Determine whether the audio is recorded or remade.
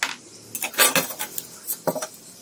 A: recorded